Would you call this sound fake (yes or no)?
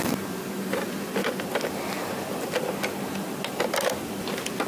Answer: no